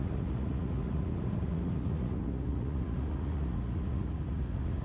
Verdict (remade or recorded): remade